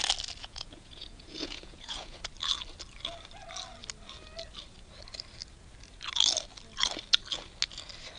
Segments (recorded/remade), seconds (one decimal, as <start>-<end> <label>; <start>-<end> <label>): 0.0-0.4 recorded; 0.4-2.2 remade; 2.2-8.2 recorded